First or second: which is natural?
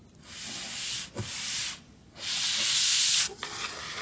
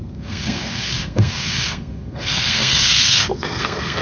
first